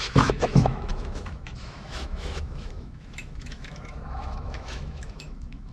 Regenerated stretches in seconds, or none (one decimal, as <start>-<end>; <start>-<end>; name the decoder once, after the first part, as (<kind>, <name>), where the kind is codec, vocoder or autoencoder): 0.0-5.7 (autoencoder, DAC-VAE)